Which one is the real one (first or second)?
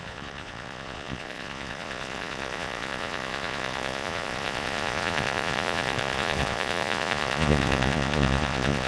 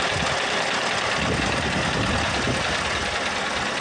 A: second